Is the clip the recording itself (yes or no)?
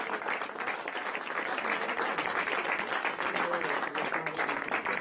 yes